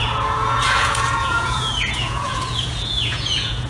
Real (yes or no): no